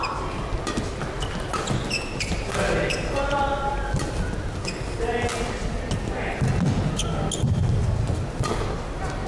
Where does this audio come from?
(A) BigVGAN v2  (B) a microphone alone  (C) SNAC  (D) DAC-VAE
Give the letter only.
B